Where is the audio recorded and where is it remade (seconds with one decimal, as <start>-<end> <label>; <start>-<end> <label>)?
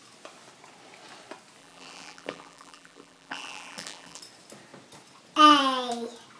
0.0-1.6 recorded; 1.6-4.2 remade; 4.2-6.4 recorded